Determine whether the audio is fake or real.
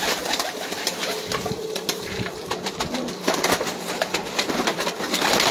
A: fake